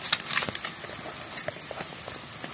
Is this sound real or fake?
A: real